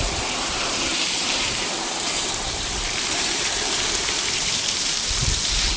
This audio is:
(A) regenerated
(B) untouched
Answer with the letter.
A